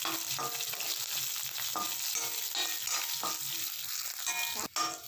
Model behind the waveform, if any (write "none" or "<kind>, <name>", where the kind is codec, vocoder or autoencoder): none